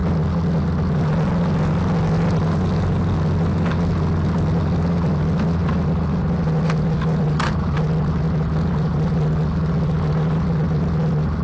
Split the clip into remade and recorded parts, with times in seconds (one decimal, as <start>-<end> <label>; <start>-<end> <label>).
0.0-11.4 recorded